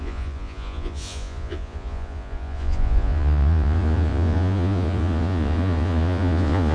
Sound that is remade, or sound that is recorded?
remade